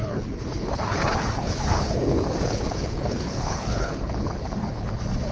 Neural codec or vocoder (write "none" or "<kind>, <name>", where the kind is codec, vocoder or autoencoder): codec, HILCodec